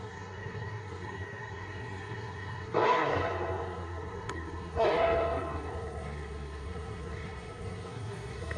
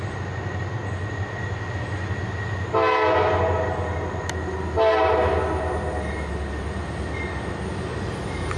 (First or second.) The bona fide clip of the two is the second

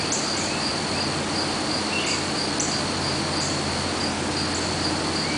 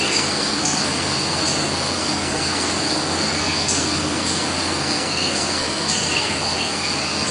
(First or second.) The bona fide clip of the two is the first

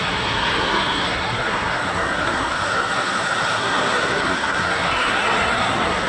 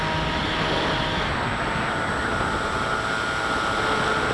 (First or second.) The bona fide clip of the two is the second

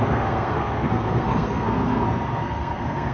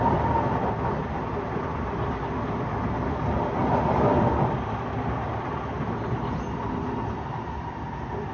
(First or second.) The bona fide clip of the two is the second